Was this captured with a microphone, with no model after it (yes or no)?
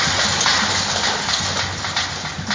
yes